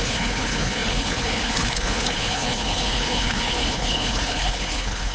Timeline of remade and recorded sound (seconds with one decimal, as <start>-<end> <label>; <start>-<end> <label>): 0.0-5.1 remade